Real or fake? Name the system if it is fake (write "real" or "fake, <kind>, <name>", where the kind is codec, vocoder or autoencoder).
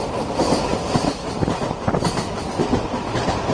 real